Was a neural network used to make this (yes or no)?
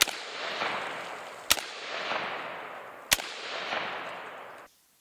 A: no